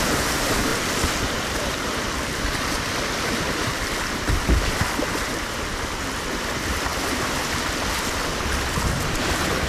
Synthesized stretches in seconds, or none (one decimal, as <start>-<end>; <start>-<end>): 0.7-5.0; 6.9-7.8